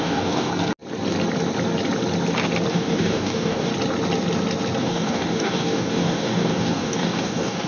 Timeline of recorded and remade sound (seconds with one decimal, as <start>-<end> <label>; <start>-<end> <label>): 0.0-0.5 remade; 0.5-2.7 recorded; 2.7-3.7 remade; 3.7-4.8 recorded; 4.8-7.7 remade